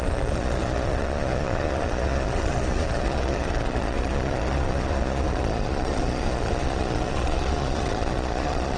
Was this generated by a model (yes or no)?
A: yes